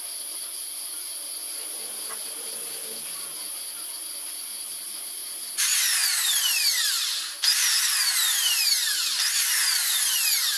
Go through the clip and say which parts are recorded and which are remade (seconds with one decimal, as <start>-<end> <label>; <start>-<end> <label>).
0.0-10.6 recorded